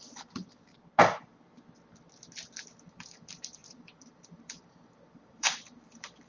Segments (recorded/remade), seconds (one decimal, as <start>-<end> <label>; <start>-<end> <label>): 0.0-0.7 remade; 0.7-2.7 recorded; 2.7-6.3 remade